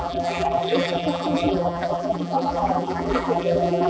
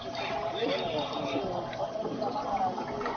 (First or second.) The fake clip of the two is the first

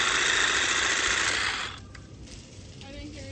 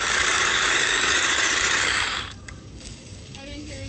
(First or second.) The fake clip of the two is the second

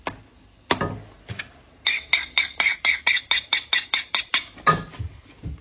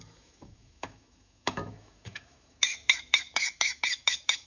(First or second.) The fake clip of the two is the second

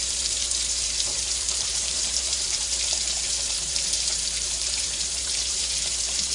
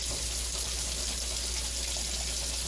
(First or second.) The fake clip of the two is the first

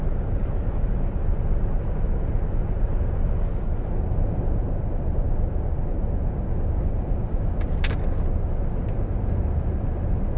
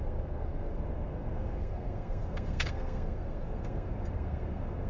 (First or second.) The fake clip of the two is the second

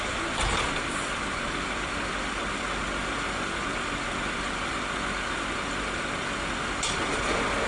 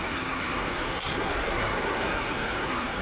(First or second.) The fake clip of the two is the second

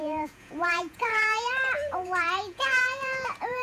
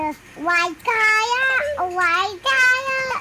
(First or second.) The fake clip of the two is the first